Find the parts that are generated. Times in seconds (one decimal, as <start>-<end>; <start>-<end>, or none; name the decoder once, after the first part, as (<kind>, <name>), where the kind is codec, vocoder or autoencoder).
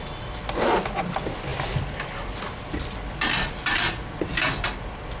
none